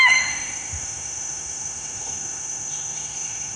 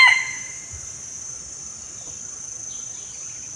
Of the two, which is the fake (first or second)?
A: first